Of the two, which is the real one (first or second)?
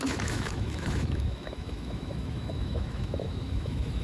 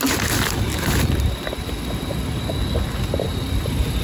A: second